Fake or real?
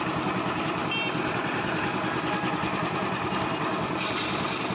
real